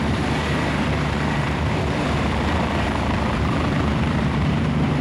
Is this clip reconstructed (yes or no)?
yes